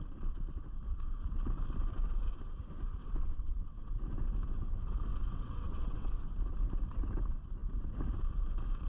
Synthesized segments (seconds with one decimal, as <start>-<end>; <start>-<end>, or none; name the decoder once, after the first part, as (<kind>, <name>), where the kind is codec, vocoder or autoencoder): 3.0-4.0 (vocoder, WaveNeXt); 5.1-6.3